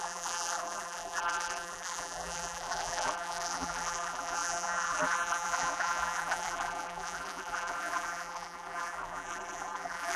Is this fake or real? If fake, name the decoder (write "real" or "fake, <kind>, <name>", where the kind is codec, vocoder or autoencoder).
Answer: fake, vocoder, BigVGAN v2